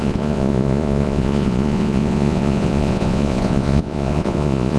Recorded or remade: remade